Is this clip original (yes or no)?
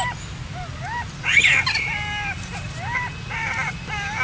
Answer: yes